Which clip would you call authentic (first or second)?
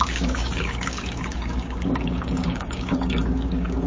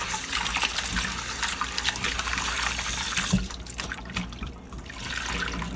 second